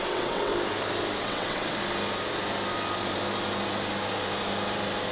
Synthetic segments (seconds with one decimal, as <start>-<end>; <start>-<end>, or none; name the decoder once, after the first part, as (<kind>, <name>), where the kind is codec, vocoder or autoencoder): 0.0-0.5 (vocoder, WaveNeXt); 1.2-1.8